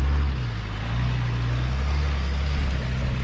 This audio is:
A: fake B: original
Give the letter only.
B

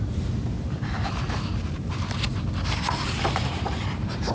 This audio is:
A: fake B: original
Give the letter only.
A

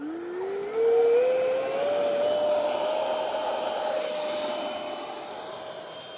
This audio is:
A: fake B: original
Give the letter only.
B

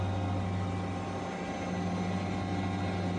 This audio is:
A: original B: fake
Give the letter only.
A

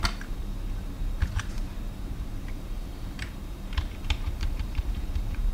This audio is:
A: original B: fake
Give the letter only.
B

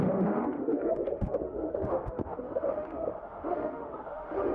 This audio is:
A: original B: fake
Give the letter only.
B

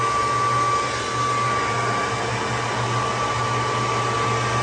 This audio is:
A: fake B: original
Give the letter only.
B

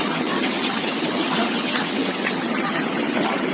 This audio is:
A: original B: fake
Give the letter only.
B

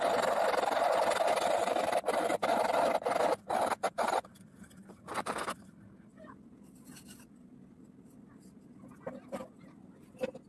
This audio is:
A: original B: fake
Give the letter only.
A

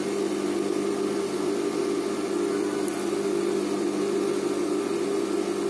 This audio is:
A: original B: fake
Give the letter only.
A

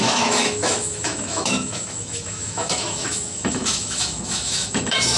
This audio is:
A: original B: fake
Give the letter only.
B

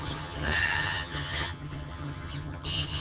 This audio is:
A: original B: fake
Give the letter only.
B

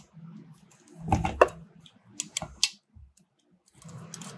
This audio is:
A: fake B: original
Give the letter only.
B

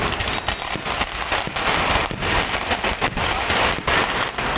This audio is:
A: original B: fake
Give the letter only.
A